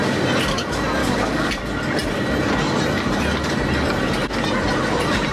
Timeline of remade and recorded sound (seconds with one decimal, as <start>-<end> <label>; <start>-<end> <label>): 0.0-1.0 recorded; 1.0-1.5 remade; 1.5-5.3 recorded